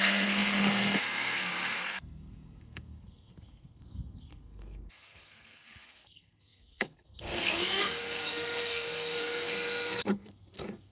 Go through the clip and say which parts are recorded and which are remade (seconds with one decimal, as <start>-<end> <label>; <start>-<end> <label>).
0.0-10.9 remade